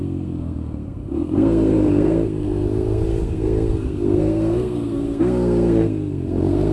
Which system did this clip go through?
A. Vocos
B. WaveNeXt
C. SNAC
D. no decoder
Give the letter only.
C